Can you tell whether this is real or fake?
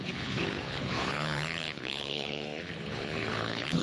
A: fake